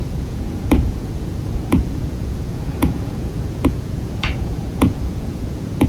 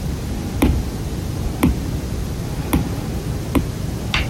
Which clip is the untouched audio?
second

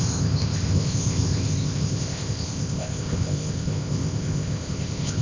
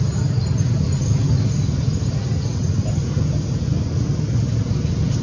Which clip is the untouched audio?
second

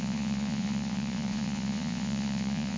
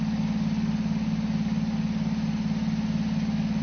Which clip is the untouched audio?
second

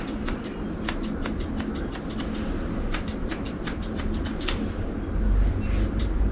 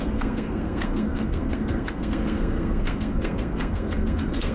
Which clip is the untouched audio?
first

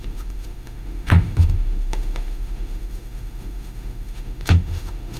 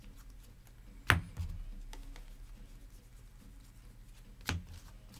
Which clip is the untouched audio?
second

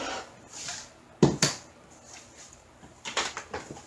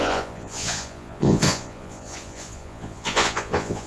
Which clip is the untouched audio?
first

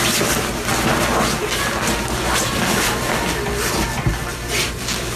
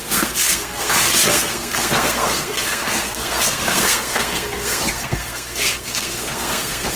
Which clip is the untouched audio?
first